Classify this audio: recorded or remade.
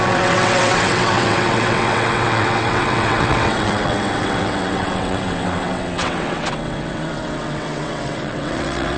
remade